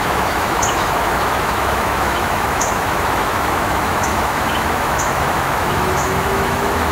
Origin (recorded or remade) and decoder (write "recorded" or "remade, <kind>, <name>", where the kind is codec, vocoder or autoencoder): remade, autoencoder, DAC-VAE